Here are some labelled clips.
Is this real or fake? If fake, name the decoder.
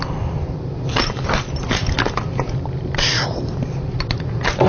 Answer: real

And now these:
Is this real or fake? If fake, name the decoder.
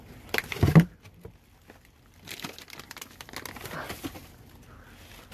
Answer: real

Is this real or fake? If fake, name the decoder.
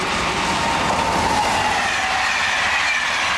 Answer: real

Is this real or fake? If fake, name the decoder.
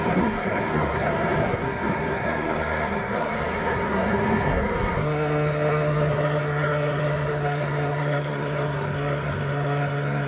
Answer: fake, codec, SNAC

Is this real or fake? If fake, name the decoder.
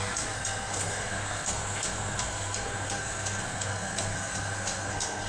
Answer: fake, codec, SNAC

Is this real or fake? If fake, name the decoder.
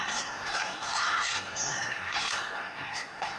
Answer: fake, codec, SNAC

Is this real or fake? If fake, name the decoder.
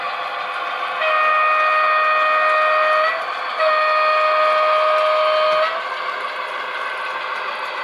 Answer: real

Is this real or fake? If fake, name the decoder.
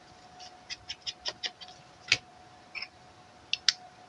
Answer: real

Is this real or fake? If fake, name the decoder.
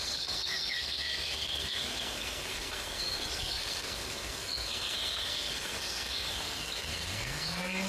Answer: fake, codec, SNAC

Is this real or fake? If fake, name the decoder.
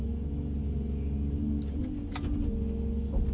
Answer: real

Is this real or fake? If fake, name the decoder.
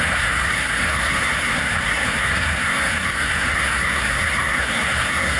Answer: fake, codec, SNAC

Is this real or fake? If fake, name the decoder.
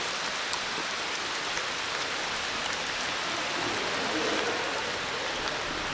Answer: real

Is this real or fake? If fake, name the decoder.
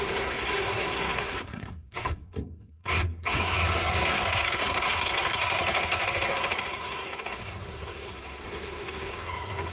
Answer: fake, codec, SNAC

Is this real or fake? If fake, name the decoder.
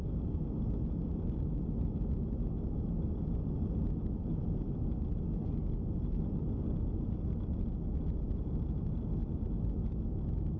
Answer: real